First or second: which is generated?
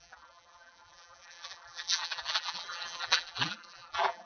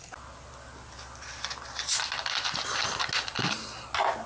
first